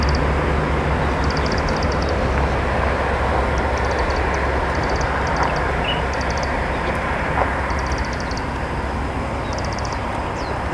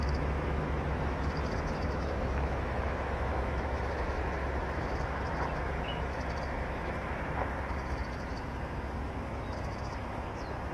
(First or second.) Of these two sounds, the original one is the first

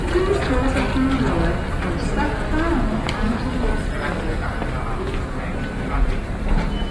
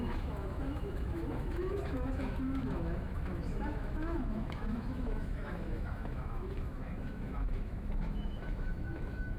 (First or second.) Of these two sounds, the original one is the first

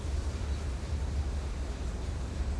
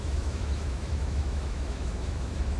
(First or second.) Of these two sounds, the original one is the first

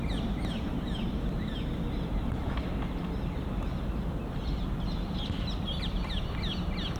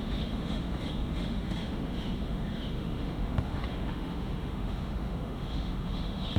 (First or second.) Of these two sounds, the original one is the first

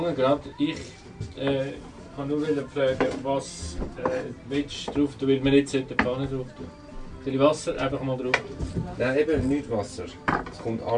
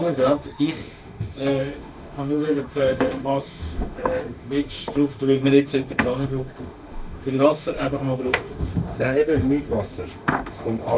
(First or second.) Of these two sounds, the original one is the first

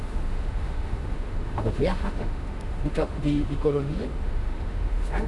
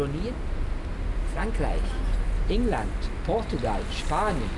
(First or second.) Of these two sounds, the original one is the second